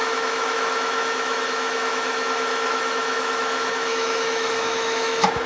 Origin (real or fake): fake